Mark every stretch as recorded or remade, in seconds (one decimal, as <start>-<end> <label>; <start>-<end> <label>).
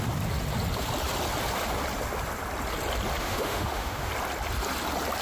0.0-3.2 recorded; 3.2-4.1 remade; 4.1-5.2 recorded